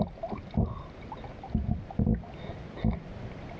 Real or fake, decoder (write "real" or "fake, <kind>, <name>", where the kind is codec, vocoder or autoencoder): real